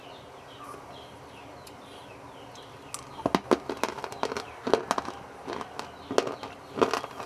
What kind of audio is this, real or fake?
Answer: real